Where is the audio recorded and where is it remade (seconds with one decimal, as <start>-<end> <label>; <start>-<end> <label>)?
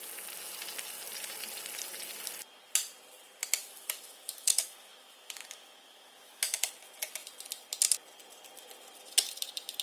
0.0-3.6 recorded; 3.6-6.7 remade; 6.7-9.8 recorded